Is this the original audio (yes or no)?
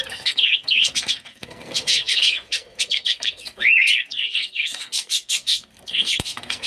no